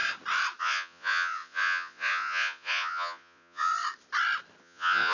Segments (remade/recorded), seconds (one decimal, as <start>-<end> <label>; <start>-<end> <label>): 0.0-0.6 recorded; 0.6-3.7 remade; 3.7-4.6 recorded; 4.6-5.1 remade